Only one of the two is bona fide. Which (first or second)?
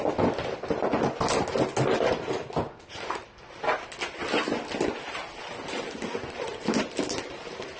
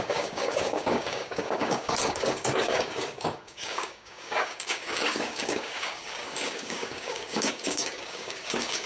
first